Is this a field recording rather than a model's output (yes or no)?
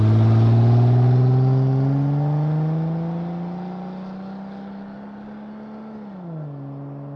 yes